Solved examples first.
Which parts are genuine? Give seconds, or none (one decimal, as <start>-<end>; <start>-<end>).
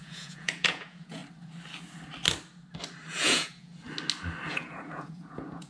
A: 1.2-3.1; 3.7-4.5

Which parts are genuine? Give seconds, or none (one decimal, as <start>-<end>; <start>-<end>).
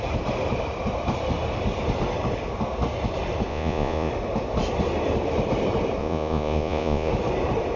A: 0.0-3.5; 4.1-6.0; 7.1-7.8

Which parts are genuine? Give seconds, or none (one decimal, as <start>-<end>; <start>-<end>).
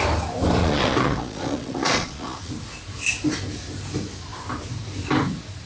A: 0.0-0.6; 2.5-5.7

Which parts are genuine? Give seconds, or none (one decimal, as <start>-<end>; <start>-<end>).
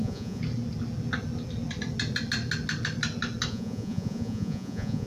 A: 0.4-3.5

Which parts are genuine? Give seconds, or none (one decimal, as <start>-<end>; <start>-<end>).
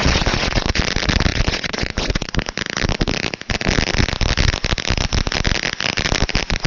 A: 0.8-1.3; 2.3-6.7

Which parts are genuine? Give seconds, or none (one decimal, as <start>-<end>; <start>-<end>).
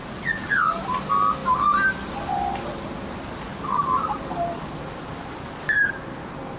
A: 0.7-6.6